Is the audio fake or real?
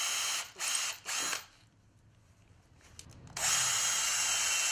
real